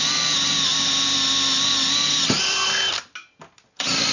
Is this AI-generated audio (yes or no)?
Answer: no